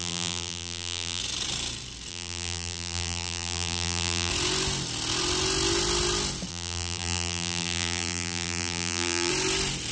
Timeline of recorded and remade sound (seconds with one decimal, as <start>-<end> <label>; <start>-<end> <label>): 0.0-1.2 remade; 1.2-2.1 recorded; 2.1-4.3 remade; 4.3-6.5 recorded; 6.5-9.3 remade; 9.3-9.9 recorded